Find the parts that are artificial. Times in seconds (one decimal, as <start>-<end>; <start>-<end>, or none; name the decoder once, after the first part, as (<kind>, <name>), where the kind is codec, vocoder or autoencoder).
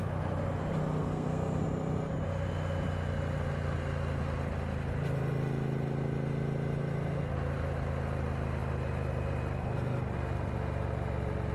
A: 1.0-1.6 (codec, SNAC)